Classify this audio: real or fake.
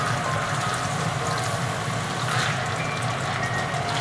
real